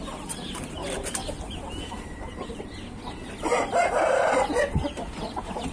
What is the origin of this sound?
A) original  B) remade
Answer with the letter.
A